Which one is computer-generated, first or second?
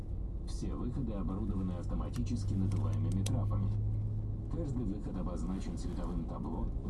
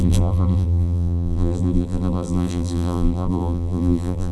second